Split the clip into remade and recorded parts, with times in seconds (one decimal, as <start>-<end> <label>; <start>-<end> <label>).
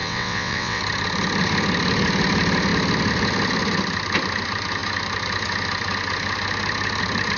0.0-0.8 remade; 0.8-7.4 recorded